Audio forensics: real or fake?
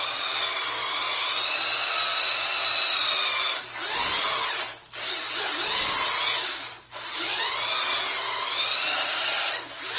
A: real